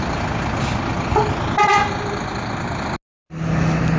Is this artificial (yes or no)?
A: no